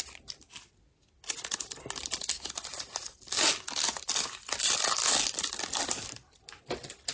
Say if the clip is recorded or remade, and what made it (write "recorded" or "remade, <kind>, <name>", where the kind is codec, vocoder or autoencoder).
recorded